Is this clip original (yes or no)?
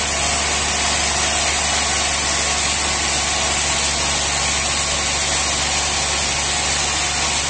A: yes